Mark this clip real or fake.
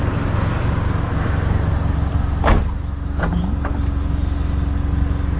real